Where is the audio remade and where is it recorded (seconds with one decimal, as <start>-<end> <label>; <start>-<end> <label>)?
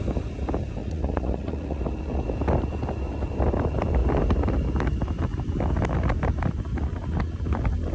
0.0-0.8 recorded; 0.8-1.8 remade; 1.8-7.9 recorded